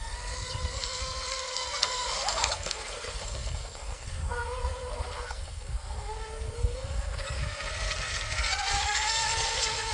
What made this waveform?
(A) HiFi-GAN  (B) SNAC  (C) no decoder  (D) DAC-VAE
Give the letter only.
B